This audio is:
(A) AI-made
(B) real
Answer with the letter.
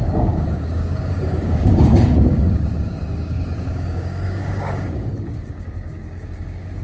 A